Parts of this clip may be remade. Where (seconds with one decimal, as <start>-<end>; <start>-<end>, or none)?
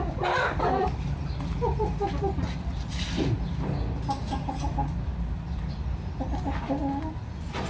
none